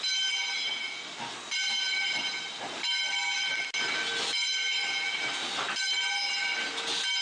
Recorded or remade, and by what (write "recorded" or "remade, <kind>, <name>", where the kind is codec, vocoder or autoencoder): recorded